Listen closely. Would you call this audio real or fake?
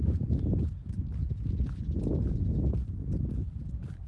real